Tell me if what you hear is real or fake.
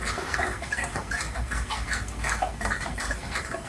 fake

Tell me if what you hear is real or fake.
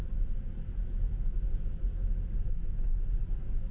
real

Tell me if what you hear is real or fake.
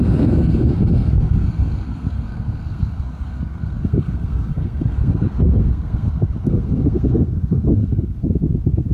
fake